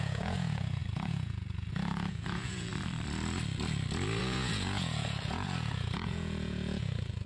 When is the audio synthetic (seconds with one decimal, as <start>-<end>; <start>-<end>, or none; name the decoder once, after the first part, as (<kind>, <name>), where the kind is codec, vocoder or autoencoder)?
0.0-2.7 (vocoder, Vocos); 4.2-7.3